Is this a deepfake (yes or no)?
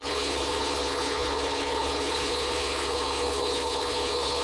yes